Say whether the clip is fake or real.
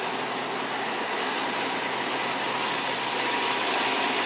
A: real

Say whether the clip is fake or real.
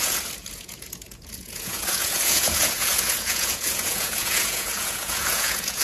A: fake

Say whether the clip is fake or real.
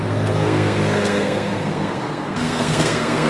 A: fake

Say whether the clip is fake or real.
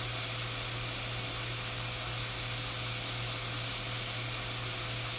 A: real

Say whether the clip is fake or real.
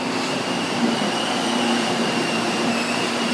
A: fake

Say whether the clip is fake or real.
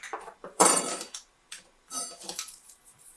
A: fake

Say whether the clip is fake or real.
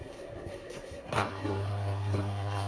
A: fake